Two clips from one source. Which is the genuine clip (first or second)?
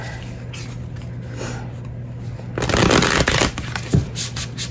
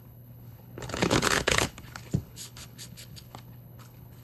first